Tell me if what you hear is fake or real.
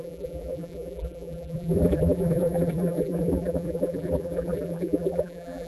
fake